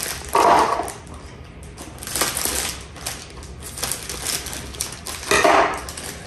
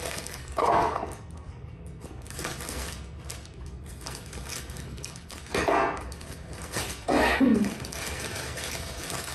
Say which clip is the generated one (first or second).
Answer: second